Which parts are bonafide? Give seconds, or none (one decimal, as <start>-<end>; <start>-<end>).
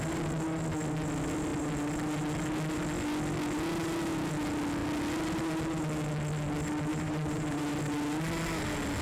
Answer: 0.0-6.9; 7.6-9.0